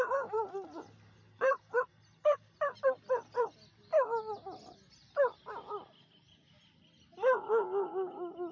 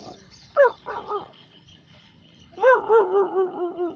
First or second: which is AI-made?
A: second